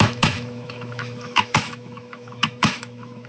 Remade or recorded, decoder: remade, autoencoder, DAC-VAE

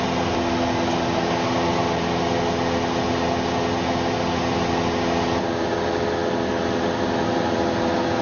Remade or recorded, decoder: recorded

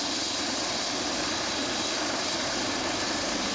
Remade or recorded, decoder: recorded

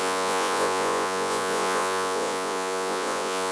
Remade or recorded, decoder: remade, vocoder, Vocos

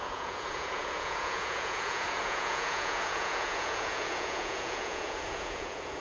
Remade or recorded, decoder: remade, vocoder, Vocos